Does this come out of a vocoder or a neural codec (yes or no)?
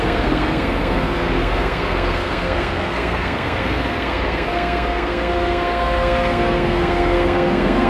yes